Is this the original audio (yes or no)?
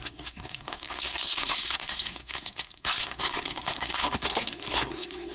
no